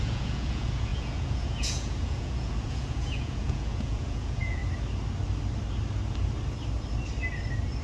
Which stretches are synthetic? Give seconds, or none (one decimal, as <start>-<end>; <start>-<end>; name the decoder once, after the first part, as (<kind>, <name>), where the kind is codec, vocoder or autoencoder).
0.0-4.6 (vocoder, Vocos)